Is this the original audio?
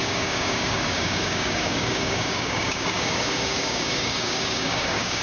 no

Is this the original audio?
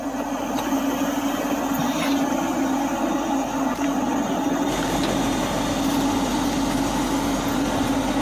yes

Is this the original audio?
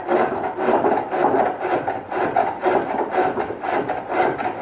yes